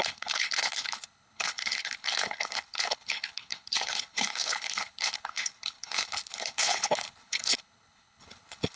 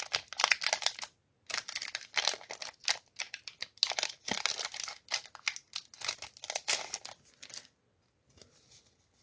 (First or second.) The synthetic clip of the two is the first